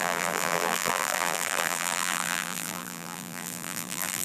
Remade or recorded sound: remade